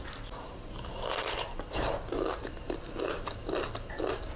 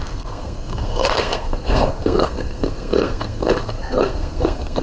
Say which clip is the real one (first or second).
first